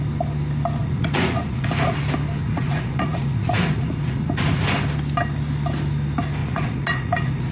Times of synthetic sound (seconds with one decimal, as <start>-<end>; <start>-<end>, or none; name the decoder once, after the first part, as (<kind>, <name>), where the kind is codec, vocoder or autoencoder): 0.8-2.0 (vocoder, Vocos); 2.4-4.7; 6.4-7.5